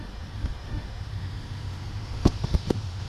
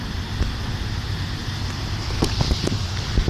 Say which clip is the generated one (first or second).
first